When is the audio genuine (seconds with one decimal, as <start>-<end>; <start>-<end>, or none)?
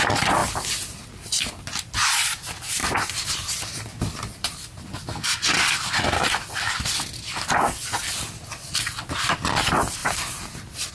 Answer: 0.0-2.8; 6.0-10.9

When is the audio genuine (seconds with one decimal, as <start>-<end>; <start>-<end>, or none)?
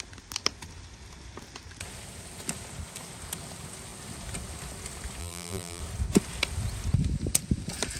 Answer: 0.0-5.2; 5.8-8.0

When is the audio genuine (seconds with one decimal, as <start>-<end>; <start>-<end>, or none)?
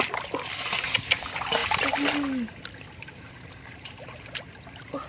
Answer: 1.6-2.6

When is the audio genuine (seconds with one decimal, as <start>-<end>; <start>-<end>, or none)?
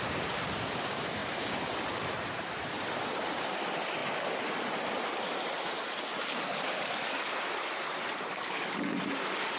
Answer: 1.2-1.8; 4.0-6.4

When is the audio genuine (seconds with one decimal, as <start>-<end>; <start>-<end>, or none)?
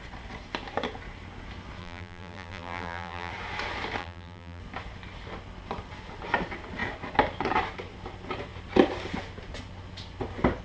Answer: 0.0-1.8; 3.3-4.0; 4.6-10.6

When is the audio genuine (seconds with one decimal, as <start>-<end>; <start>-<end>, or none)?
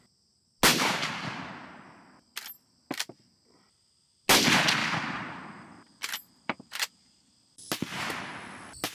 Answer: 0.0-0.7; 1.4-4.8; 7.3-8.9